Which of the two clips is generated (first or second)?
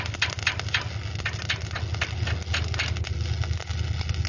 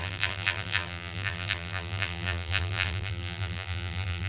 second